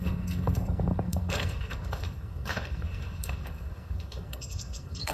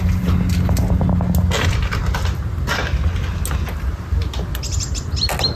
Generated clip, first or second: first